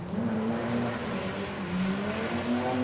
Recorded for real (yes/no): yes